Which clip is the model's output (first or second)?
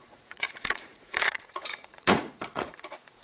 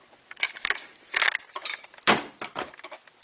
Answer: first